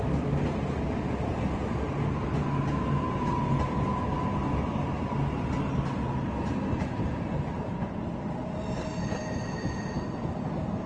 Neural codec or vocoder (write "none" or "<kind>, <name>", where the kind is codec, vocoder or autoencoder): none